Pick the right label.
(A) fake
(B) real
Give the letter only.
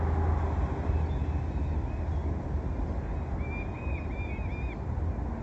B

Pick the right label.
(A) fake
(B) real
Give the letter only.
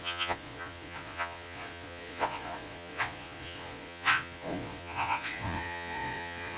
A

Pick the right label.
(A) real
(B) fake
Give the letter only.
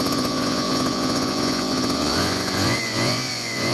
B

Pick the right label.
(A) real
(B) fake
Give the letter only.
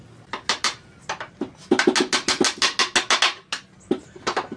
A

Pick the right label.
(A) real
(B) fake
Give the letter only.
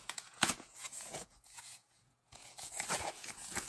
B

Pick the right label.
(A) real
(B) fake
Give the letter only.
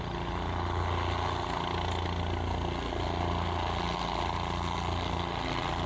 A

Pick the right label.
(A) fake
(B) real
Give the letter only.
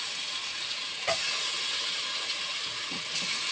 A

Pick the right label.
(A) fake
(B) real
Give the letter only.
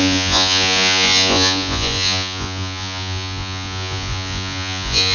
A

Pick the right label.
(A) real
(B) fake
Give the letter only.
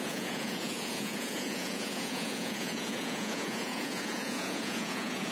B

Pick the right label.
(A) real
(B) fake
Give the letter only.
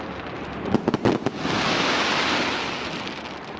A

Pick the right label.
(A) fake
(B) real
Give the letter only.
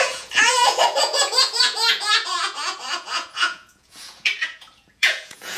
A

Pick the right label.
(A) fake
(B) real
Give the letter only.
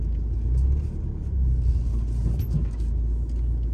B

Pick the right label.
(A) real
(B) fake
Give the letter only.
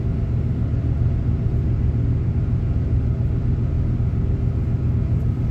A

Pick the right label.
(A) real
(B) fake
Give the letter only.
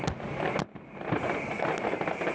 A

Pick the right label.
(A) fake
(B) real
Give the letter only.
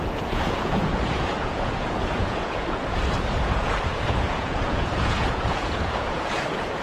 A